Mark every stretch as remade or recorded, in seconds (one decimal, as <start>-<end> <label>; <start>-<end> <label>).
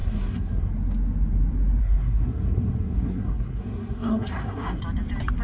0.0-0.7 remade; 0.7-1.8 recorded; 1.8-4.8 remade; 4.8-5.4 recorded